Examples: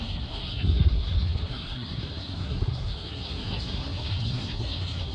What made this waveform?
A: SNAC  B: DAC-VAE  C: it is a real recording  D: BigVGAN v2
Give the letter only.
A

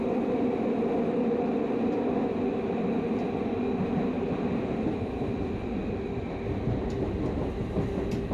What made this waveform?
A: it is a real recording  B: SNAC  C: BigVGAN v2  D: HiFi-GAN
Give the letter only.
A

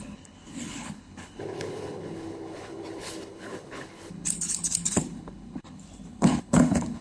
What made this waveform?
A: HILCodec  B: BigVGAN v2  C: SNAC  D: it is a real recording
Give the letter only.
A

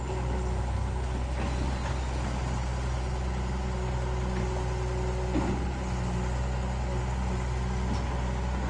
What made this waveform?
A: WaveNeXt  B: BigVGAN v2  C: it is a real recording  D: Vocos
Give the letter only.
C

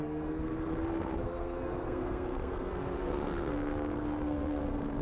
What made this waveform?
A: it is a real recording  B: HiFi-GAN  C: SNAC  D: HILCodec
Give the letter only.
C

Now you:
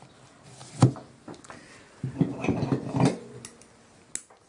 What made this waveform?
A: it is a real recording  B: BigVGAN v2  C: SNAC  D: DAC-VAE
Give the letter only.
A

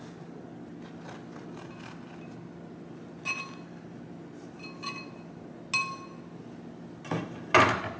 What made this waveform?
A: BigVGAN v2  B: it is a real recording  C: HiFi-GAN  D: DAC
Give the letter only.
B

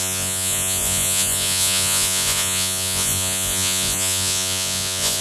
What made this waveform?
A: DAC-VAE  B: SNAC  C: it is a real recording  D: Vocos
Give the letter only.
D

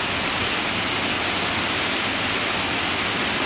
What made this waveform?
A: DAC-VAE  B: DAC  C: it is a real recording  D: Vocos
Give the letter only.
C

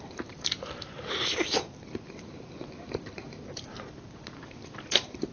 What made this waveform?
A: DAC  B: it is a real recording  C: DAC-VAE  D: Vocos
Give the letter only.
B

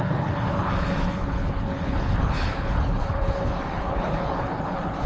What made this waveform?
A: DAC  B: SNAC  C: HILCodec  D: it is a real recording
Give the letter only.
C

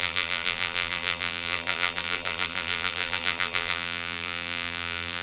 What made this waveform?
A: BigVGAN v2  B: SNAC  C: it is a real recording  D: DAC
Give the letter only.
A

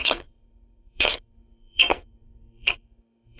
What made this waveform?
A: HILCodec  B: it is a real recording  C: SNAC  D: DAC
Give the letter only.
C